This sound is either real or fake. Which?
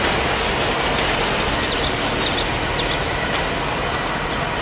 real